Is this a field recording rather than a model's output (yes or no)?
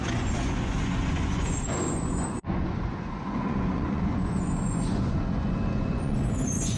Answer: no